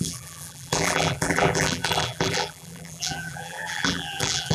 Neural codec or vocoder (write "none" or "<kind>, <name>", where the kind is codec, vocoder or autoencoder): vocoder, BigVGAN v2